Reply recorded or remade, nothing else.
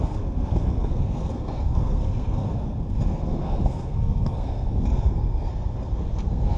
remade